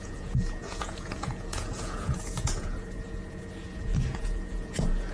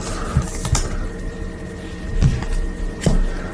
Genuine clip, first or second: second